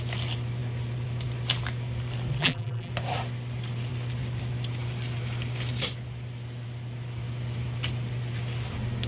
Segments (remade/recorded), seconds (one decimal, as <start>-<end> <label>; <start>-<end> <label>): 0.0-2.4 recorded; 2.4-2.9 remade; 2.9-9.1 recorded